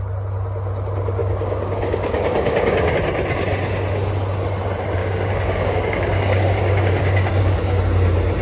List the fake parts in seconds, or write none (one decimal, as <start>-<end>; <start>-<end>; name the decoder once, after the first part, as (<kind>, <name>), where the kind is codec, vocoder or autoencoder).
1.2-2.9 (codec, DAC); 5.0-7.8